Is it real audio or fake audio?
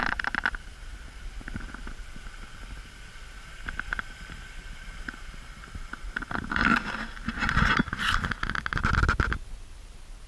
real